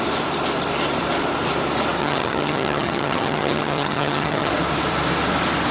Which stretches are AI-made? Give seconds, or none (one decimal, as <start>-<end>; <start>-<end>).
2.0-4.5